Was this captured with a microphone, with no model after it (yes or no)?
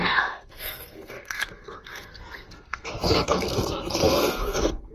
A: no